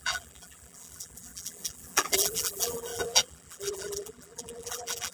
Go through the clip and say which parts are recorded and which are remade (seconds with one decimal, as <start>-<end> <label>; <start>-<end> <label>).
0.0-5.1 remade